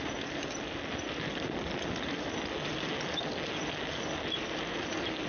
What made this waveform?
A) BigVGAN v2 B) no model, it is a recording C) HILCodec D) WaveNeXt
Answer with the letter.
B